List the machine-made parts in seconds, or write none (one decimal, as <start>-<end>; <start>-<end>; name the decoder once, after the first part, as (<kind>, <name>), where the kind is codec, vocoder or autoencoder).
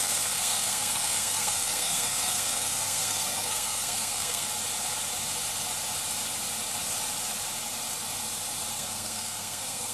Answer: 0.0-4.5 (codec, SNAC); 8.7-9.9